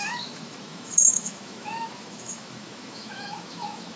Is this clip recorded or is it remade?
remade